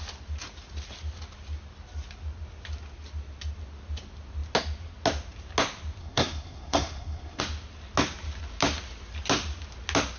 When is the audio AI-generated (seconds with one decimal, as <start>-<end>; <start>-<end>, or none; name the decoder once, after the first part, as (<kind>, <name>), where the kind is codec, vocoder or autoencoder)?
6.0-7.4 (codec, SNAC)